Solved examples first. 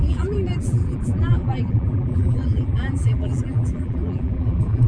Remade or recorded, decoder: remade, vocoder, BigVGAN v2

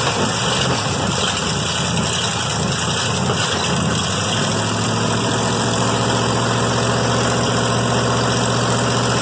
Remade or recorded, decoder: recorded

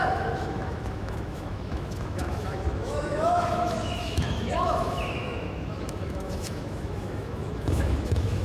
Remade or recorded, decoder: remade, autoencoder, DAC-VAE